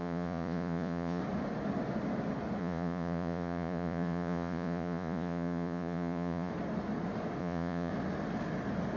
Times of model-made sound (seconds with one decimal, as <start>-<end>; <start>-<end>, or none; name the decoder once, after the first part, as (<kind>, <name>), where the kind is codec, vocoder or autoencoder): 0.0-1.2 (vocoder, Vocos); 2.6-6.5; 7.4-7.9